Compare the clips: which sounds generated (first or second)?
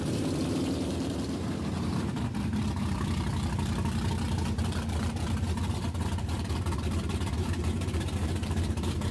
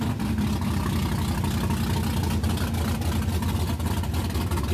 first